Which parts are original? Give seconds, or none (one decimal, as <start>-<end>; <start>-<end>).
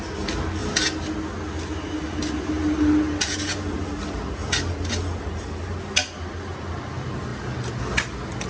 0.0-8.5